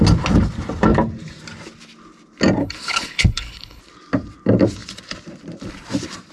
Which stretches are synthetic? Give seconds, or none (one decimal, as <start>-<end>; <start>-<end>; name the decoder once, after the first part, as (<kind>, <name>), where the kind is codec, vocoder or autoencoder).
2.6-3.8 (codec, HILCodec)